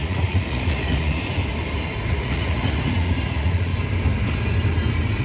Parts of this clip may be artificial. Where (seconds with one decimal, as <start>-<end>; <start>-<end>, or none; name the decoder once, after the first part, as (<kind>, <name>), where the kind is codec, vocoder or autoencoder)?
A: 0.0-1.4 (vocoder, Vocos); 2.1-3.7